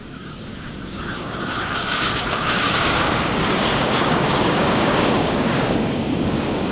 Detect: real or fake fake